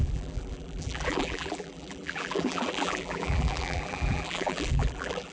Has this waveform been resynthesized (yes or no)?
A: yes